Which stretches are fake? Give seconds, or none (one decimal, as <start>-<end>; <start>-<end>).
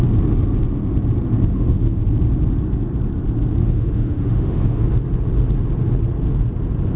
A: 1.5-2.0; 3.6-4.8